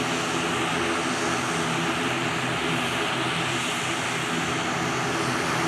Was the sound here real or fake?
real